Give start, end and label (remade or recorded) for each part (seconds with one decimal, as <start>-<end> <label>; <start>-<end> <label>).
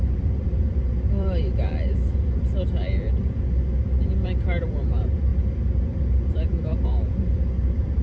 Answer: 0.0-5.3 remade; 5.3-6.3 recorded; 6.3-6.7 remade; 6.7-7.6 recorded; 7.6-8.0 remade